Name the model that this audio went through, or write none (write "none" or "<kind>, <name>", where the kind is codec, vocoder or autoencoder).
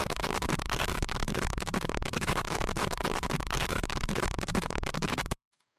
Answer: codec, DAC